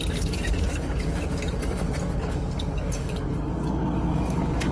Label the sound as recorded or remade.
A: remade